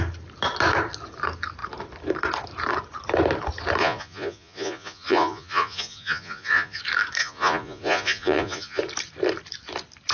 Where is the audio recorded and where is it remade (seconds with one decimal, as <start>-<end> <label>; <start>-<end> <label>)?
0.0-3.8 recorded; 3.8-6.8 remade; 6.8-7.2 recorded; 7.2-8.8 remade; 8.8-10.1 recorded